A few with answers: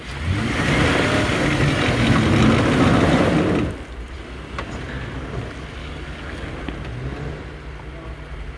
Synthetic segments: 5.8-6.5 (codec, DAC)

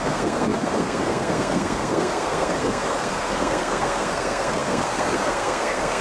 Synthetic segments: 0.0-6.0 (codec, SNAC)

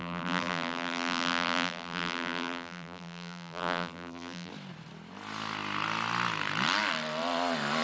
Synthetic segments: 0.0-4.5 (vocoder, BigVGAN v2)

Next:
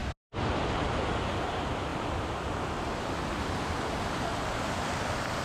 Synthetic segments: 1.2-5.4 (vocoder, BigVGAN v2)

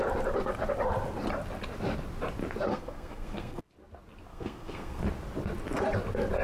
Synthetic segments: 2.7-3.6 (codec, SNAC); 4.3-5.0